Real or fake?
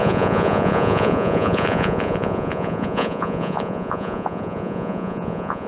fake